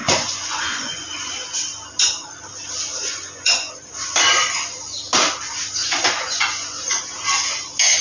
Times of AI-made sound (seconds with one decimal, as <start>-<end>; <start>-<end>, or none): 0.0-1.3; 2.9-3.7; 5.8-7.0